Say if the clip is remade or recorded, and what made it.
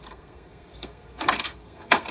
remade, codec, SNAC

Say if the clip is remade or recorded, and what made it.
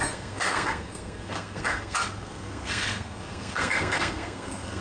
remade, codec, SNAC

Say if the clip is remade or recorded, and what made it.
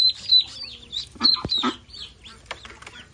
recorded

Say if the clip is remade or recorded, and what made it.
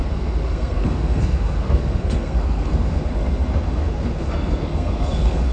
remade, codec, SNAC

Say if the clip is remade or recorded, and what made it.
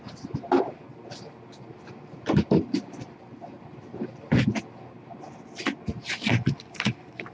recorded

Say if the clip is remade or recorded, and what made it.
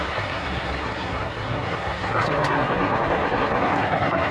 remade, codec, SNAC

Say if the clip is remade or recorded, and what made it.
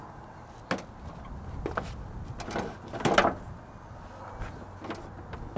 recorded